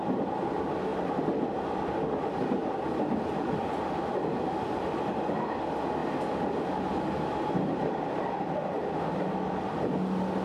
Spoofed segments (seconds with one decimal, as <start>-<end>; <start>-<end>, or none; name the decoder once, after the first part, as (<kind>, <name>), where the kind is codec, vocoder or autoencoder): 0.9-1.6 (vocoder, BigVGAN v2)